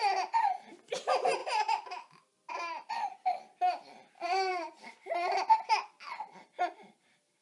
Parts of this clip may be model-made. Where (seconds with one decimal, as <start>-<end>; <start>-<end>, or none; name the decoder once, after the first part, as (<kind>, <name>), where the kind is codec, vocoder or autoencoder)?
none

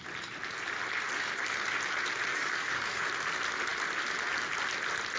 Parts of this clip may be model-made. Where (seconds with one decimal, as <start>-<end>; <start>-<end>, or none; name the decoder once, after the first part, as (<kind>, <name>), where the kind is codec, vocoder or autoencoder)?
2.3-3.1 (codec, DAC)

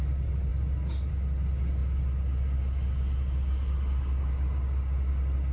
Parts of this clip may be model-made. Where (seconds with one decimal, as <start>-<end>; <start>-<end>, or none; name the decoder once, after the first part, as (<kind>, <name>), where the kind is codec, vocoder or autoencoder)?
none

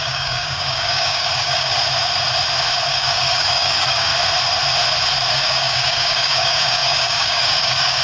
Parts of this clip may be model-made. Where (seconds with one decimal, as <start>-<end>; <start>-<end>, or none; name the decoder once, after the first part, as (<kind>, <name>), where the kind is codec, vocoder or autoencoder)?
0.0-1.7 (codec, DAC); 2.9-4.1; 5.3-8.0

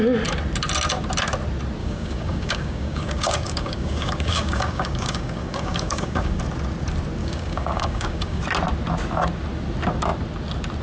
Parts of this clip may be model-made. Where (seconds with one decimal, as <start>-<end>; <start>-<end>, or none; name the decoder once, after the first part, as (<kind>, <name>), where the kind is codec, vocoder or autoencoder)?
1.8-6.4 (codec, DAC); 7.2-8.4

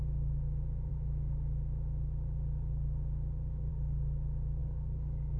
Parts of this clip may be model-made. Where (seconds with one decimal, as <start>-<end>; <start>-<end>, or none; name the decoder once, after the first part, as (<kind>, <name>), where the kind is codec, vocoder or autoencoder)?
4.6-5.4 (codec, DAC)

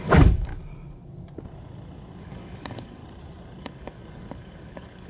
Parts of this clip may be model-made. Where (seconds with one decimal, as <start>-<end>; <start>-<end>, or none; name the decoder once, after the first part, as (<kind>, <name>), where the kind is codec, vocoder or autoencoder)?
0.0-0.5 (codec, DAC); 2.2-3.0; 3.6-5.1

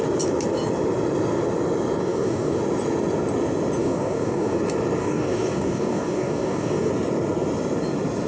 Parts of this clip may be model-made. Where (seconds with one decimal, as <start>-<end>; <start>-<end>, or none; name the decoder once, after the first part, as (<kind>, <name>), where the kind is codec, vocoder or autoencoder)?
2.0-2.6 (codec, DAC); 3.8-4.6; 5.0-6.9